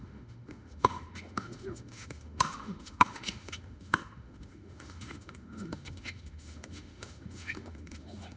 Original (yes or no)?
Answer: no